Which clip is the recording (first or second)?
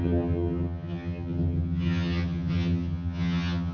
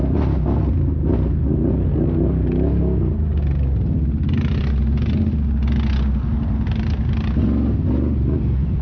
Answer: second